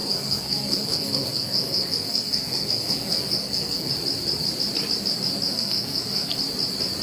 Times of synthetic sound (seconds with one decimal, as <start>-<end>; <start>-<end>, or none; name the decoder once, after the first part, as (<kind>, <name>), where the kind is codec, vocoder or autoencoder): 0.0-3.9 (codec, SNAC); 5.5-6.4